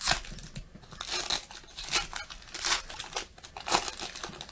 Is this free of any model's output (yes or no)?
yes